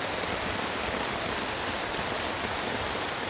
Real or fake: real